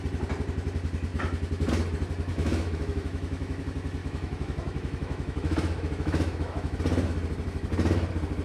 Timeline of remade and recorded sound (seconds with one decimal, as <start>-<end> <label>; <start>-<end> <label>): 0.0-2.3 recorded; 2.3-3.6 remade; 3.6-4.0 recorded; 4.0-6.8 remade; 6.8-8.4 recorded